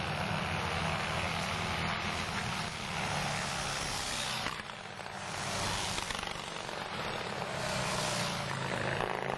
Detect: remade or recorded recorded